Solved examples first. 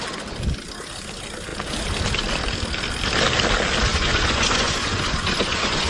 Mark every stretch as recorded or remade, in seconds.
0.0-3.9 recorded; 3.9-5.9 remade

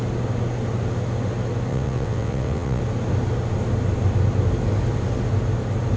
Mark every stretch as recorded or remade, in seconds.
0.0-1.7 recorded; 1.7-2.8 remade; 2.8-6.0 recorded

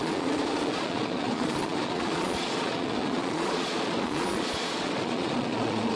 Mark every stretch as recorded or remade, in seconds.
0.0-6.0 remade

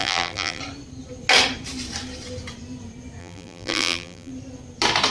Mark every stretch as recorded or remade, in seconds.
0.0-0.6 remade; 0.6-3.2 recorded; 3.2-4.3 remade; 4.3-5.1 recorded

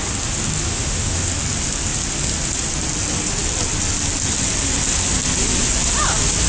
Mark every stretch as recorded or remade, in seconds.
0.0-0.7 recorded; 0.7-1.3 remade; 1.3-6.5 recorded